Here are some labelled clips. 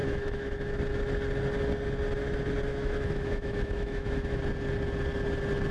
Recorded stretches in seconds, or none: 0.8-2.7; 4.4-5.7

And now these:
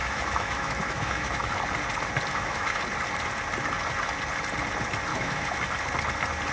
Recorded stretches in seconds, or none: 1.5-2.3; 2.8-5.1; 5.6-6.5